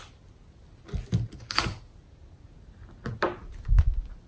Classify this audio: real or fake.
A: real